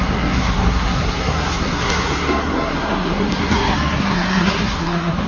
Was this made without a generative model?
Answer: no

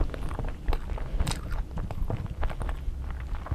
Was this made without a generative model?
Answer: yes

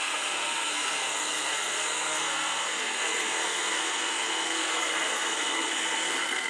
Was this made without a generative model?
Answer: no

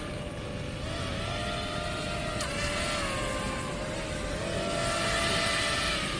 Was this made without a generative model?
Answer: yes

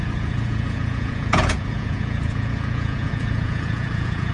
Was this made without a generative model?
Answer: no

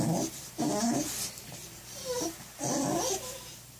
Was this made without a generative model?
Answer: yes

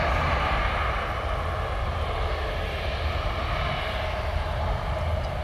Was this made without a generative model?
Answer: yes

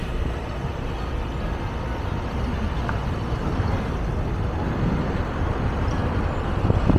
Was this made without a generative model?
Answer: yes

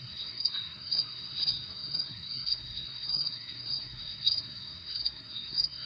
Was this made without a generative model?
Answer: no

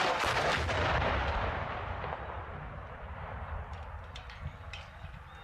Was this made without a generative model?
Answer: yes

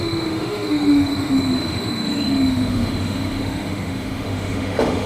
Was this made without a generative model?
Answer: no